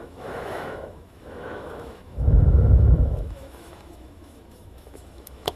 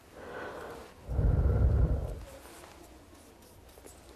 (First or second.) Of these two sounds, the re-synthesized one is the first